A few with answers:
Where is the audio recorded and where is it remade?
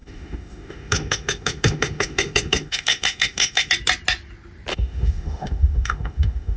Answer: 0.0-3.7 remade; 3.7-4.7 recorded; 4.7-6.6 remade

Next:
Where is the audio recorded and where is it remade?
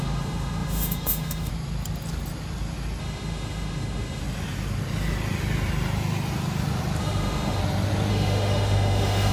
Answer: 0.0-1.5 remade; 1.5-3.0 recorded; 3.0-4.2 remade; 4.2-7.0 recorded; 7.0-7.6 remade; 7.6-8.1 recorded; 8.1-9.3 remade